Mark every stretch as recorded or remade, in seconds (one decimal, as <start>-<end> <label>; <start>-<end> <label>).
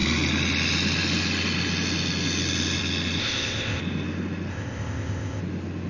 0.0-3.2 recorded; 3.2-3.8 remade; 3.8-4.5 recorded; 4.5-5.4 remade; 5.4-5.9 recorded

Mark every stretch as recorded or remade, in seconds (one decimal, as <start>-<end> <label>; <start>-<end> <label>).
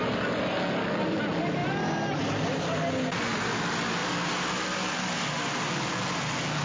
0.0-6.6 recorded